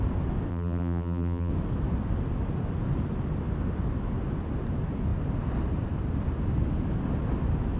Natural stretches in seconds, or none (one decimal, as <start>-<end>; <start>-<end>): 0.0-0.5; 1.5-7.8